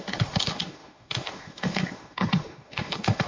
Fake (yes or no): yes